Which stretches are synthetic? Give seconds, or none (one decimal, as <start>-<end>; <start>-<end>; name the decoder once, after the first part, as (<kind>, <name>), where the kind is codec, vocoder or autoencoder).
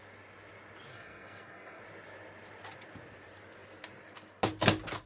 0.9-1.8 (codec, SNAC)